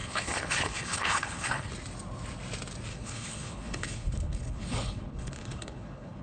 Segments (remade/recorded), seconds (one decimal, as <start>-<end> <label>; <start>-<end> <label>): 0.0-1.7 remade; 1.7-2.9 recorded; 2.9-6.2 remade